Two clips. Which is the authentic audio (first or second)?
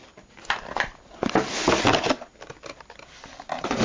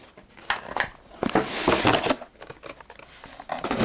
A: second